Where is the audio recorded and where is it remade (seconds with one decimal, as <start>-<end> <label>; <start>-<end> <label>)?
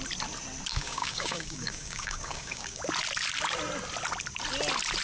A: 0.0-0.7 recorded; 0.7-2.8 remade; 2.8-5.0 recorded